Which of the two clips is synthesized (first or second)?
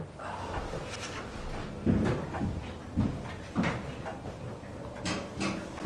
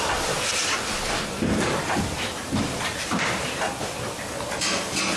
second